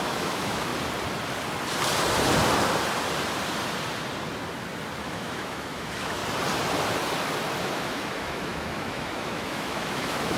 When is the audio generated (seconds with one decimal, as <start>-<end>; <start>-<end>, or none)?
0.0-0.7; 5.0-6.2; 7.6-10.4